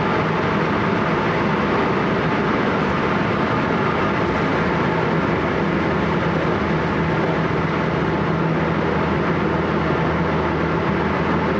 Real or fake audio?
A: real